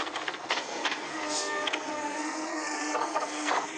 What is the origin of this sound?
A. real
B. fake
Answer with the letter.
B